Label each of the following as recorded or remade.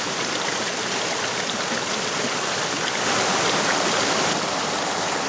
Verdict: recorded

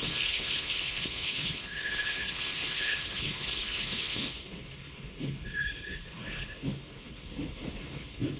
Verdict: remade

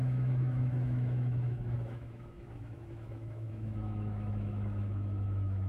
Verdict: remade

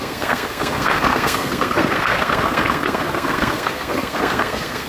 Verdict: remade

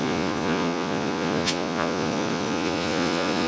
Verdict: remade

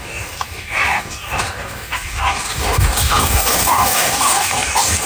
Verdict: remade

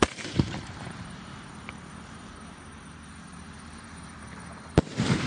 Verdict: remade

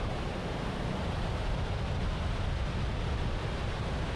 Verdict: remade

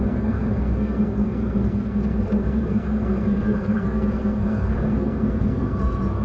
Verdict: remade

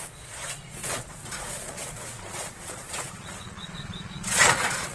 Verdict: remade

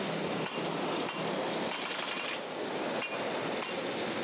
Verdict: recorded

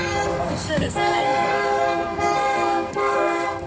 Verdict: remade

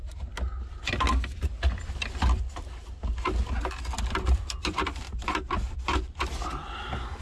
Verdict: recorded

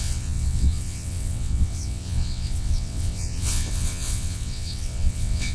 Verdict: remade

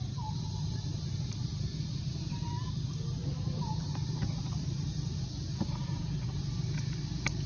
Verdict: remade